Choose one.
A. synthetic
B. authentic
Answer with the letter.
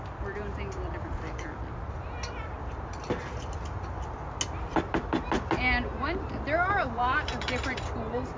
B